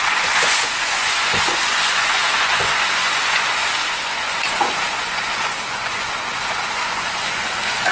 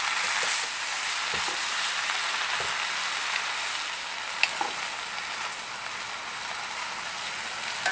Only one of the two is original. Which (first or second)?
second